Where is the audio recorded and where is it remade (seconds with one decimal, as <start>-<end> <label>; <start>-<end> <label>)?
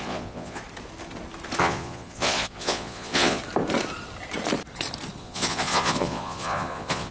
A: 0.0-0.6 remade; 0.6-1.6 recorded; 1.6-3.4 remade; 3.4-5.2 recorded; 5.2-7.1 remade